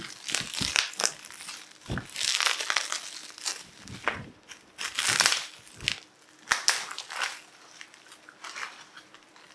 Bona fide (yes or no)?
yes